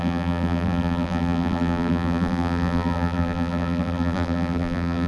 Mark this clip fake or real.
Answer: fake